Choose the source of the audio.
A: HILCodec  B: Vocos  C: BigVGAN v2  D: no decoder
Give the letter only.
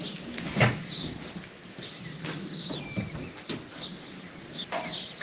D